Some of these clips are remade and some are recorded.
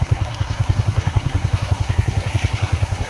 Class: remade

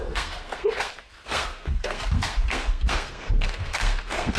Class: remade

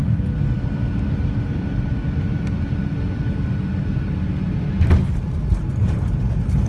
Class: recorded